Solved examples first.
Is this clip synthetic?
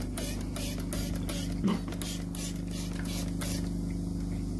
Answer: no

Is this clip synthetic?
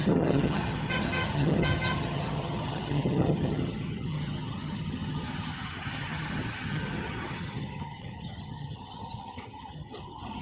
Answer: yes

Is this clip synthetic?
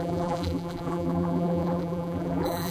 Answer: yes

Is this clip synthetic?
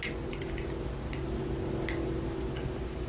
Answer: no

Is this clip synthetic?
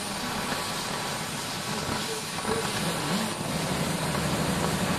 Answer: no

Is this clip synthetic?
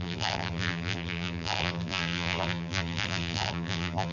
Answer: yes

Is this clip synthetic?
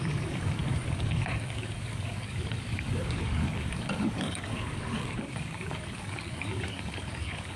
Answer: yes